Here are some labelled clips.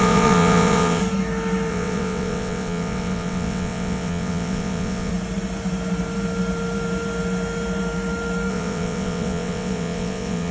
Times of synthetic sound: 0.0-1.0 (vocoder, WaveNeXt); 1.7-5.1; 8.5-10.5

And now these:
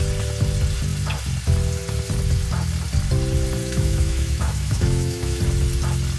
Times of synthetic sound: 3.6-5.4 (autoencoder, DAC-VAE)

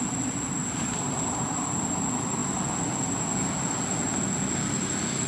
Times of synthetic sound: 0.6-2.0 (vocoder, BigVGAN v2)

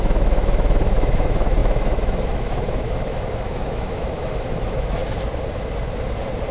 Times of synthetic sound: 0.0-5.0 (autoencoder, DAC-VAE)

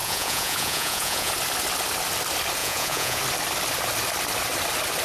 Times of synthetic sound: 0.0-1.3 (vocoder, Vocos); 2.6-3.2

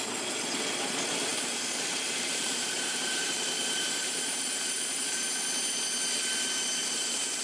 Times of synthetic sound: 1.3-5.2 (vocoder, BigVGAN v2); 6.8-7.4